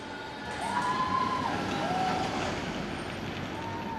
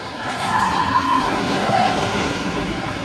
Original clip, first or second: first